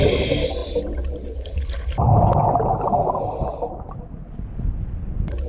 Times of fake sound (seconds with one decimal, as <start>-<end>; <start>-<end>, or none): none